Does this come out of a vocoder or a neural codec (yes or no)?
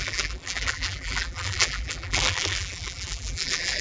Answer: yes